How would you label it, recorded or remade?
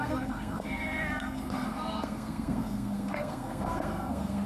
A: remade